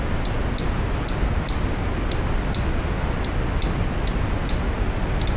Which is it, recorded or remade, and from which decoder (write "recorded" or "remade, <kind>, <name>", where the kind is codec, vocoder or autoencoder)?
recorded